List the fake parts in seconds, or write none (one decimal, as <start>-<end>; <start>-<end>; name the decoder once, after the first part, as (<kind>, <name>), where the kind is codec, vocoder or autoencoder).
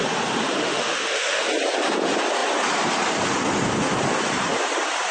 0.6-1.4 (autoencoder, DAC-VAE)